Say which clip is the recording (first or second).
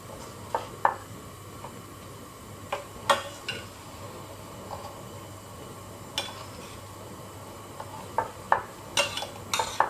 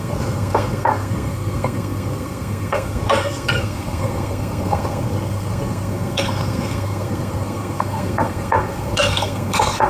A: first